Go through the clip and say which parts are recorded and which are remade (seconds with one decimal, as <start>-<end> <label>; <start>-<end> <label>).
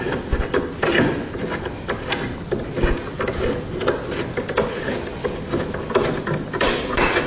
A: 0.0-7.3 recorded